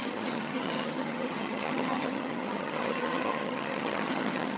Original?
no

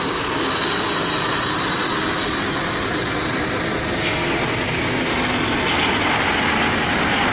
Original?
yes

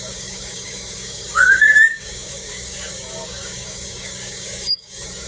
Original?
no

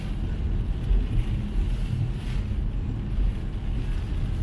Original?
yes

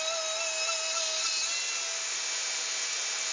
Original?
yes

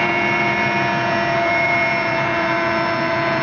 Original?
no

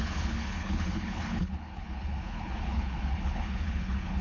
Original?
no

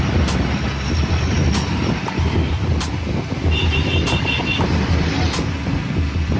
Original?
yes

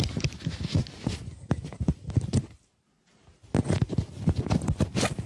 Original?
yes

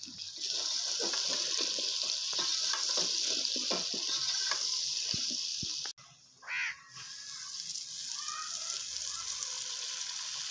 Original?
yes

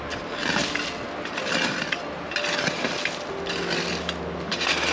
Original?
yes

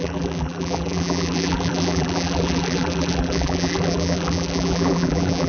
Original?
no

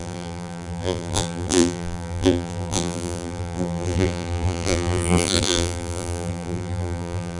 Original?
no